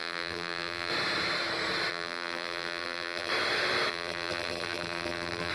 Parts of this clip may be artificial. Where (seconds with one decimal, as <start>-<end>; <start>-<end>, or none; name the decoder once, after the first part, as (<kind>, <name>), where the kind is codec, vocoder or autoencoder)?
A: 0.0-0.9 (vocoder, BigVGAN v2); 1.9-3.3; 3.9-5.5